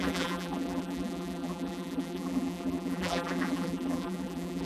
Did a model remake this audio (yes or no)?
yes